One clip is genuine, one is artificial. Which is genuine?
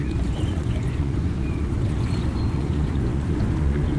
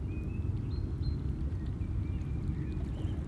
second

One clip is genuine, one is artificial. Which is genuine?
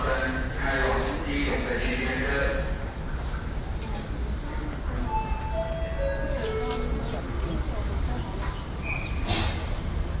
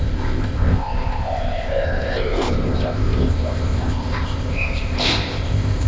first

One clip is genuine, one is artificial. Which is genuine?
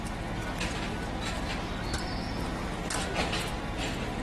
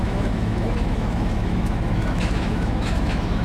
first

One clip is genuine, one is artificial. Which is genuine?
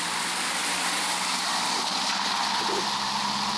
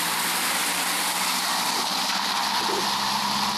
second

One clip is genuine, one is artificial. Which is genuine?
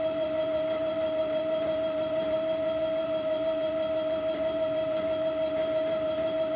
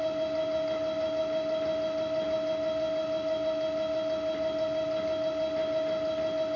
second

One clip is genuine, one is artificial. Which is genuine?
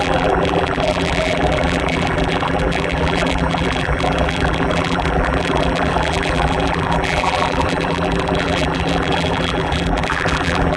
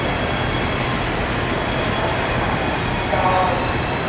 second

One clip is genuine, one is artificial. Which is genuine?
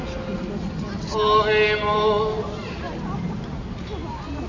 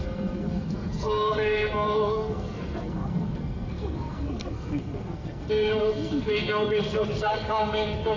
first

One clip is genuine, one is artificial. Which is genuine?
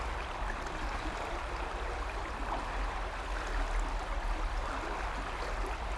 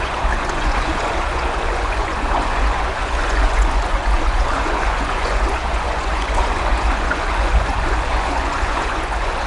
first